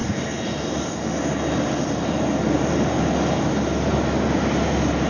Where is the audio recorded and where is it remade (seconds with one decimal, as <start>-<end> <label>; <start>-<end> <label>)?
0.0-5.1 recorded